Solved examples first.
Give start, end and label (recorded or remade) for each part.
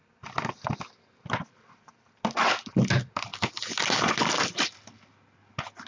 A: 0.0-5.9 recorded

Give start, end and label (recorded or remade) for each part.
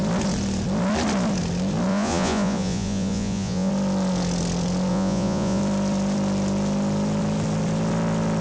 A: 0.0-1.9 recorded; 1.9-3.7 remade; 3.7-4.9 recorded; 4.9-5.6 remade; 5.6-8.4 recorded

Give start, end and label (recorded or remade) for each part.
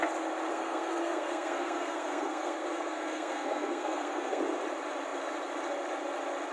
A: 0.0-0.5 recorded; 0.5-4.4 remade; 4.4-6.5 recorded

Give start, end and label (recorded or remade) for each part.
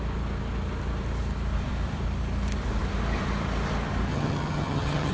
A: 0.0-4.1 recorded; 4.1-5.1 remade